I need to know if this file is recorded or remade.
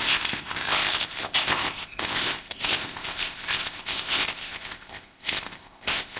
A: remade